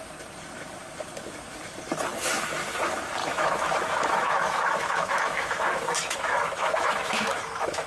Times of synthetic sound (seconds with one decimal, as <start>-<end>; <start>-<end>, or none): 3.2-7.9